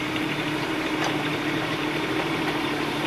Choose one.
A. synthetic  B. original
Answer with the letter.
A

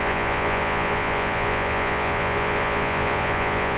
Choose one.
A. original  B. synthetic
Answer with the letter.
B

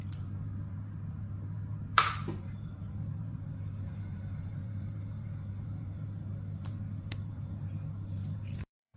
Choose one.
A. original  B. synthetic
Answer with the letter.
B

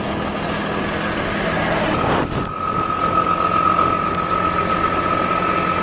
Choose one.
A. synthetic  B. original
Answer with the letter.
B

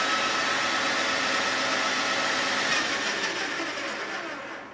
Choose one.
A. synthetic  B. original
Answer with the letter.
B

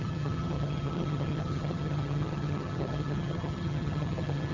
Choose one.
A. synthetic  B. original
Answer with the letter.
A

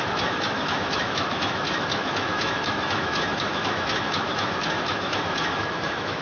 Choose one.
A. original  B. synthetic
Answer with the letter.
B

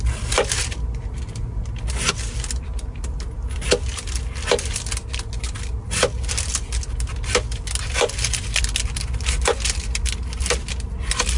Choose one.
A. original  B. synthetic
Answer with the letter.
A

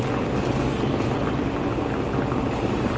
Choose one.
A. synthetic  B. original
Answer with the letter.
B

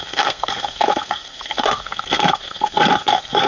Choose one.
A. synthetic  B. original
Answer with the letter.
A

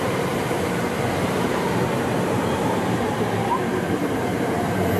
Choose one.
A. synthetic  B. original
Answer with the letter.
A